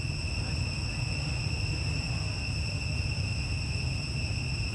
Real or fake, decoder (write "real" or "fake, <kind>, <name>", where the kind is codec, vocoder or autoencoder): real